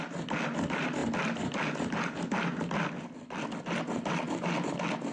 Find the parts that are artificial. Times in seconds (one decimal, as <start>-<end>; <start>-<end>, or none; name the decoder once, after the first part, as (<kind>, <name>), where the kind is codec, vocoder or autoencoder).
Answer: none